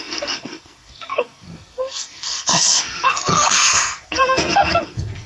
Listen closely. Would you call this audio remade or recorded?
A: remade